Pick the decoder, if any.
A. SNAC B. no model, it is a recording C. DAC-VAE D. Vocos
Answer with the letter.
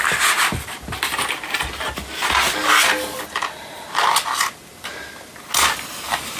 B